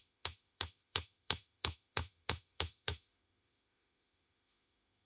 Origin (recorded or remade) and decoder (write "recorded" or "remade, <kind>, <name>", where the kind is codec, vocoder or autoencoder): remade, autoencoder, DAC-VAE